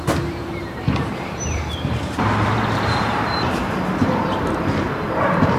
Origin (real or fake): fake